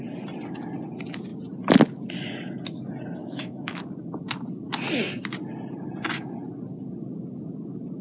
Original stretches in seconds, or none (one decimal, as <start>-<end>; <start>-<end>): 0.0-3.2; 3.8-8.0